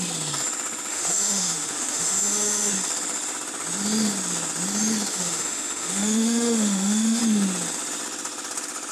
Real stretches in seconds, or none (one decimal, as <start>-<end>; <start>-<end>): 0.0-0.9; 2.7-5.1; 7.2-8.9